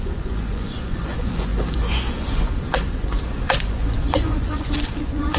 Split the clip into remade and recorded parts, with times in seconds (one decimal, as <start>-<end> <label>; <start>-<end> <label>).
0.0-5.4 remade